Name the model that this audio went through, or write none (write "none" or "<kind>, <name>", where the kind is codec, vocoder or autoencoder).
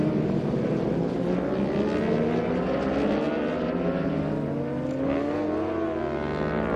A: none